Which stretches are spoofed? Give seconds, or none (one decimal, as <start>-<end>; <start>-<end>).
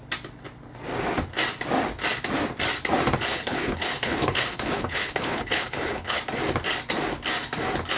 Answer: 3.3-6.2